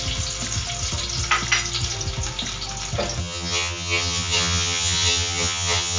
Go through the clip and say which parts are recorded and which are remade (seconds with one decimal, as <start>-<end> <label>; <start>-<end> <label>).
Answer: 0.0-3.2 recorded; 3.2-6.0 remade